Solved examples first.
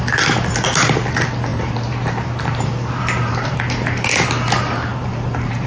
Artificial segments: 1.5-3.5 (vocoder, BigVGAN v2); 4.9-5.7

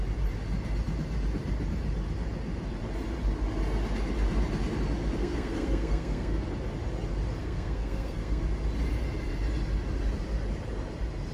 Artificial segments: 5.2-6.4 (codec, SNAC); 7.4-8.4

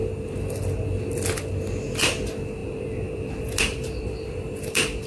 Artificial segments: none

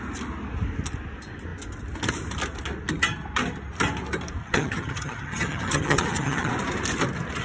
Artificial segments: 4.4-6.5 (vocoder, HiFi-GAN)